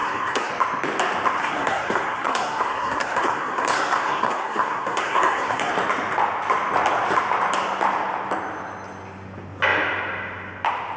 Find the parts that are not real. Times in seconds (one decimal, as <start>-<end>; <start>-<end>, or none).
0.0-0.5; 1.4-5.7